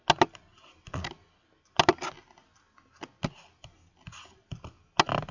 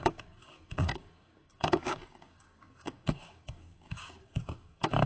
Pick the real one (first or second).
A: first